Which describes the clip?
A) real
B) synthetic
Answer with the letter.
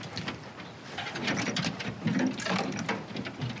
A